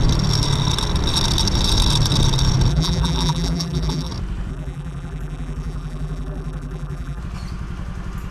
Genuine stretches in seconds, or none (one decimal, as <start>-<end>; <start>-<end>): 0.0-2.7; 4.1-4.5; 7.2-8.3